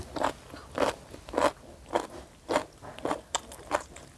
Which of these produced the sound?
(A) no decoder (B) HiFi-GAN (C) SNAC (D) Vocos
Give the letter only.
A